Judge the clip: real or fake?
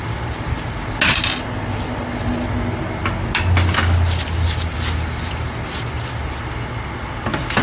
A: real